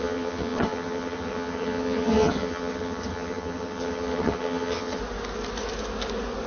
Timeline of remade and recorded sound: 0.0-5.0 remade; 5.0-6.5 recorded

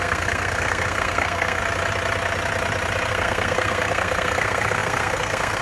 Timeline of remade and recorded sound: 0.0-1.6 remade; 1.6-3.1 recorded; 3.1-5.6 remade

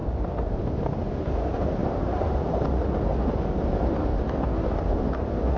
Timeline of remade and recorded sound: 0.0-0.6 remade; 0.6-1.8 recorded; 1.8-2.8 remade; 2.8-5.6 recorded

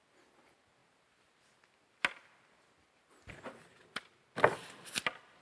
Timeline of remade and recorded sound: 0.0-5.4 recorded